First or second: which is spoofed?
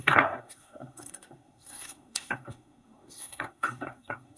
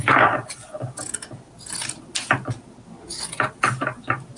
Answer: first